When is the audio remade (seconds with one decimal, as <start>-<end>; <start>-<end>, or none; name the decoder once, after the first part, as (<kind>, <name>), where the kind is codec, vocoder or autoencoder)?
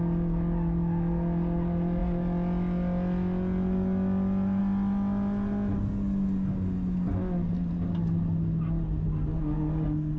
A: none